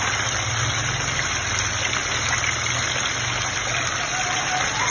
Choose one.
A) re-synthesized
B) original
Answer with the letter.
B